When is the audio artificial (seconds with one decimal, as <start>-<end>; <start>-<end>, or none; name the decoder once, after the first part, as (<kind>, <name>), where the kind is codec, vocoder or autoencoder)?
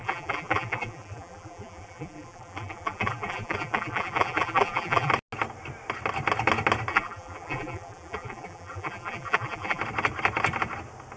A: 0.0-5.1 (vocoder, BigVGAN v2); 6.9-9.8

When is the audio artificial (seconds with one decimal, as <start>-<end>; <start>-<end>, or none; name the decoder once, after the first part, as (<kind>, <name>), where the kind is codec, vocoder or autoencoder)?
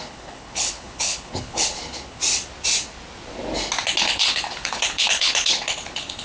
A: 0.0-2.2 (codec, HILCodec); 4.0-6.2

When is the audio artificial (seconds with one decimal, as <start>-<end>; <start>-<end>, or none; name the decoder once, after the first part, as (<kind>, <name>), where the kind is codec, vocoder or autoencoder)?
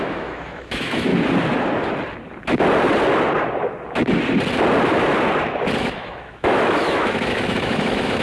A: 0.0-1.1 (autoencoder, DAC-VAE); 5.8-8.2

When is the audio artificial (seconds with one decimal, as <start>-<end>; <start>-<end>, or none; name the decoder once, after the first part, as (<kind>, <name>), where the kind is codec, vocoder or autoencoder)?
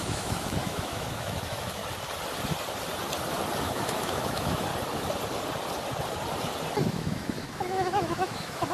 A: 0.0-1.8 (autoencoder, DAC-VAE); 3.6-4.7; 6.9-8.7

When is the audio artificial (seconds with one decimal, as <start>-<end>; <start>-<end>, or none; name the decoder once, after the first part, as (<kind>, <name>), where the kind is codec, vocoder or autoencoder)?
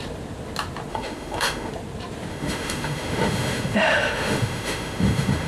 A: 0.9-1.7 (autoencoder, DAC-VAE); 2.3-5.5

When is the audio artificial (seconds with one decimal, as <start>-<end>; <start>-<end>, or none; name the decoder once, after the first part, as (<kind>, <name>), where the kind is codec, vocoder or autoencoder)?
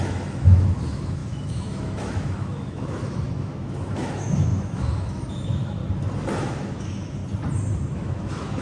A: 0.0-5.8 (autoencoder, DAC-VAE); 6.4-7.2; 7.9-8.6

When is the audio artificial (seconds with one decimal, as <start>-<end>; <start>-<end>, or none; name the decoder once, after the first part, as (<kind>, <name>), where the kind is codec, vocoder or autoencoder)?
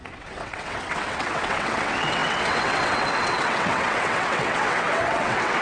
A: 0.0-5.6 (vocoder, WaveNeXt)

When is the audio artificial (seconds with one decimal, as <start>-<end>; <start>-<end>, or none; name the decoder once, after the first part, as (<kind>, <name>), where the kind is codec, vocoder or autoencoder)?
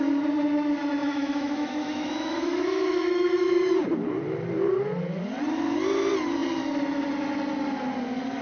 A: 1.0-3.7 (autoencoder, DAC-VAE)